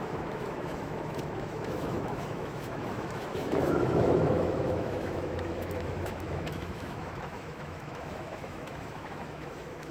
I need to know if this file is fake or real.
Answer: fake